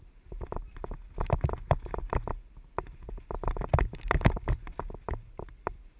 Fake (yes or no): no